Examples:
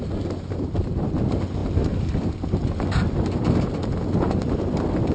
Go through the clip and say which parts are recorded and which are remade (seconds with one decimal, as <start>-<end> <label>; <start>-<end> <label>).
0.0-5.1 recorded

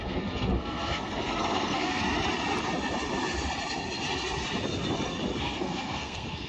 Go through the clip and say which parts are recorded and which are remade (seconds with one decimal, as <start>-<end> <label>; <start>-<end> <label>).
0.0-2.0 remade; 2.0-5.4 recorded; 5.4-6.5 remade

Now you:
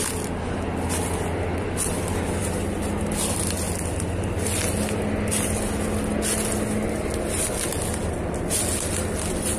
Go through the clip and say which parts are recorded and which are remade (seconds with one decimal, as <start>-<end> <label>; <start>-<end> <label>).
0.0-9.6 recorded

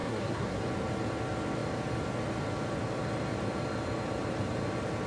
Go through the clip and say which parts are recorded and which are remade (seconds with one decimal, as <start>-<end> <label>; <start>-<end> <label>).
0.0-0.6 remade; 0.6-5.1 recorded

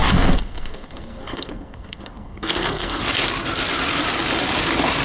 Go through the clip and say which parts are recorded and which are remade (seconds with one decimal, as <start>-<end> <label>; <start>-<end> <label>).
0.0-3.0 remade; 3.0-5.0 recorded

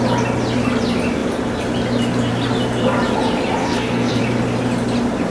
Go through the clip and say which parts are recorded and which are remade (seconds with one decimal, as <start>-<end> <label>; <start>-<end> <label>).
0.0-3.6 recorded; 3.6-4.2 remade; 4.2-5.3 recorded